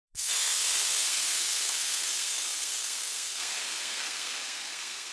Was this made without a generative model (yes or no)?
no